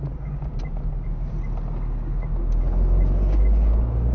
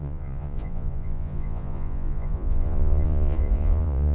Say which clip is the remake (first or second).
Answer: second